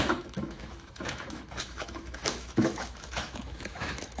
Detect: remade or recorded remade